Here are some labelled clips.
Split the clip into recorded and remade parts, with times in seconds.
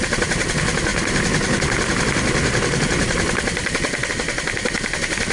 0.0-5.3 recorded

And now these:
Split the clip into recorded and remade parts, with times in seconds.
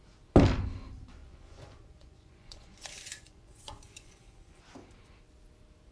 0.0-1.2 recorded; 1.2-4.6 remade; 4.6-5.9 recorded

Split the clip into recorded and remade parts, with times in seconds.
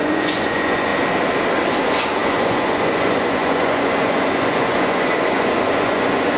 0.0-0.9 remade; 0.9-1.8 recorded; 1.8-6.4 remade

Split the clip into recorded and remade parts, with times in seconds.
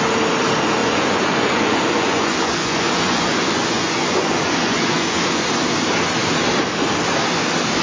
0.0-0.8 recorded; 0.8-5.5 remade; 5.5-7.8 recorded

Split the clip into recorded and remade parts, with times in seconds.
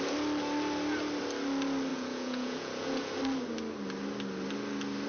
0.0-1.9 recorded; 1.9-3.1 remade; 3.1-5.1 recorded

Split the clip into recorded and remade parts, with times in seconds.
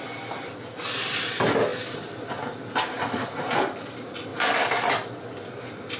0.0-6.0 recorded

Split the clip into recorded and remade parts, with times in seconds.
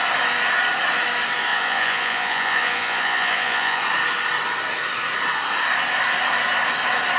0.0-1.5 recorded; 1.5-3.8 remade; 3.8-7.2 recorded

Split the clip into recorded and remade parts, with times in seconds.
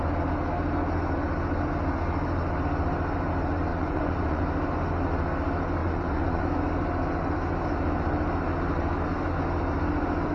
0.0-3.7 recorded; 3.7-4.4 remade; 4.4-5.8 recorded; 5.8-6.4 remade; 6.4-10.3 recorded